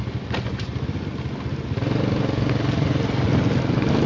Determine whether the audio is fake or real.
real